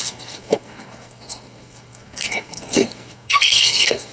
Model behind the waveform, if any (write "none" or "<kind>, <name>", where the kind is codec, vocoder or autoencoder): codec, SNAC